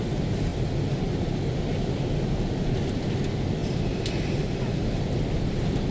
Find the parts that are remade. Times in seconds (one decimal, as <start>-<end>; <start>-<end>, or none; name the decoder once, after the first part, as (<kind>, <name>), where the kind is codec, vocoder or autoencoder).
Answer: none